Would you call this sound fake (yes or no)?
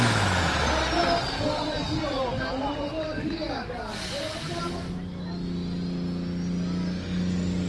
no